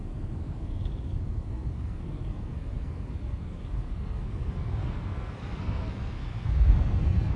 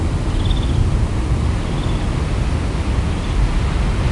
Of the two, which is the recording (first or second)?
second